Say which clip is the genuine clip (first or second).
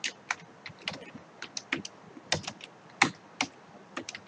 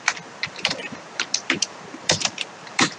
first